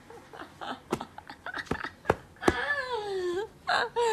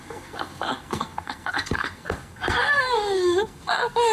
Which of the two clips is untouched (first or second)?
first